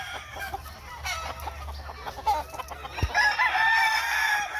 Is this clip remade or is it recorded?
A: recorded